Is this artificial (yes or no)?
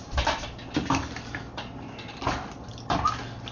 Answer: no